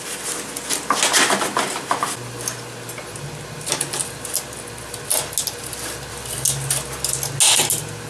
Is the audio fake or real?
real